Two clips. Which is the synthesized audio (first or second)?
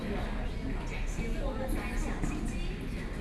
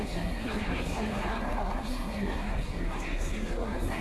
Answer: second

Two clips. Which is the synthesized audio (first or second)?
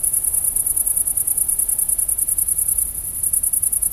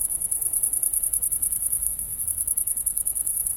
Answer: second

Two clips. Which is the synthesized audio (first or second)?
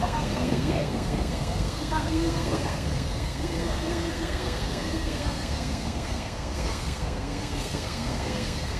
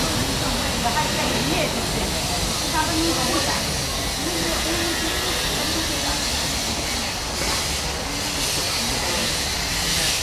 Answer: first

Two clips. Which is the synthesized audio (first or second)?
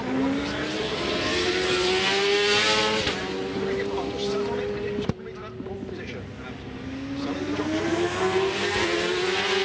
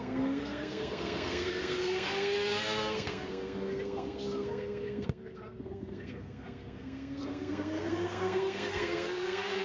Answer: second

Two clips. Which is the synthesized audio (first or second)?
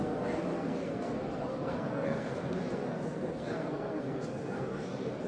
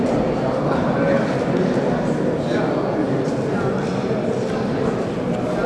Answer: first